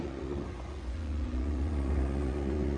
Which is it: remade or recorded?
remade